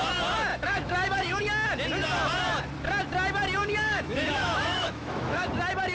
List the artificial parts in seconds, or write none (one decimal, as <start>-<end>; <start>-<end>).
0.5-1.4; 3.6-5.5